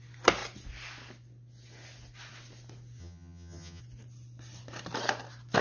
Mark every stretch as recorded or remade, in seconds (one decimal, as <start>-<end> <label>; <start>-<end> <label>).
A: 0.0-3.0 recorded; 3.0-3.8 remade; 3.8-5.6 recorded